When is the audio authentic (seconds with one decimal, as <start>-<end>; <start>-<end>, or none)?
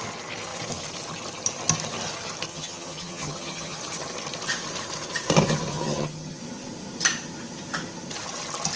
0.0-2.5; 3.8-5.7; 6.4-8.8